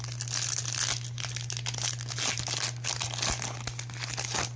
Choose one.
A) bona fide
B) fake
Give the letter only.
A